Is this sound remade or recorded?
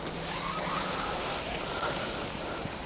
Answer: recorded